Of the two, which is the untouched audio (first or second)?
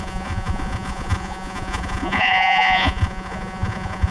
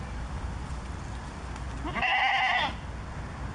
second